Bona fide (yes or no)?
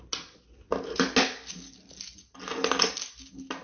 yes